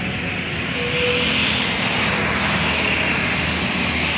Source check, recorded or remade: recorded